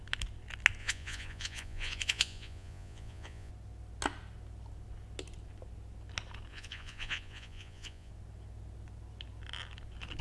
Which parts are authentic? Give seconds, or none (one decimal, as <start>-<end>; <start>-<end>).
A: 0.0-0.8; 3.5-6.5; 8.1-10.2